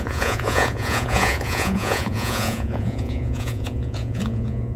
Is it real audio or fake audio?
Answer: fake